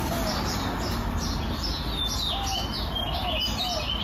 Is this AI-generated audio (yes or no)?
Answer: no